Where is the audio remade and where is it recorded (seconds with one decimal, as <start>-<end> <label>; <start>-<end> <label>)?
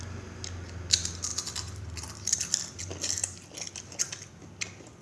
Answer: 0.0-5.0 recorded